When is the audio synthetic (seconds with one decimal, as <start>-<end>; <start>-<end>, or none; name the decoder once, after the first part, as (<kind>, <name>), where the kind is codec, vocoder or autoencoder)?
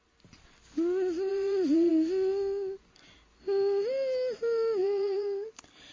1.3-1.9 (vocoder, Vocos); 4.8-5.5